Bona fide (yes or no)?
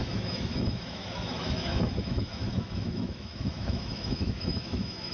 no